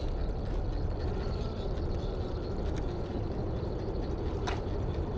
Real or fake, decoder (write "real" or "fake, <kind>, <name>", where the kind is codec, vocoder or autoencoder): real